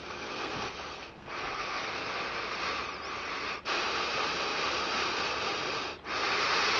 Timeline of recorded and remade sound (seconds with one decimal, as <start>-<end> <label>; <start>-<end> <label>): 0.0-1.8 remade; 1.8-6.8 recorded